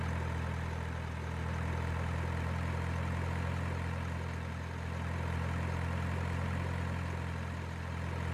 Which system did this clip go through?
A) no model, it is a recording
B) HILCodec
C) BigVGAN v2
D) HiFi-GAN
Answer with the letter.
A